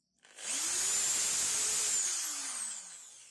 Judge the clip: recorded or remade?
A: recorded